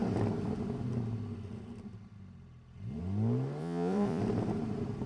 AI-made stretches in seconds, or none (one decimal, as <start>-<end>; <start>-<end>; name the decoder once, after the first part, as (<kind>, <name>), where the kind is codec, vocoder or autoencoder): 3.6-4.2 (vocoder, Vocos)